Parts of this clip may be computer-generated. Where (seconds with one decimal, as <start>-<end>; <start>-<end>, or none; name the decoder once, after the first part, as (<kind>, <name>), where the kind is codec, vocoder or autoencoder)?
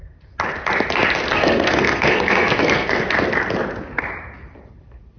1.3-3.0 (codec, SNAC)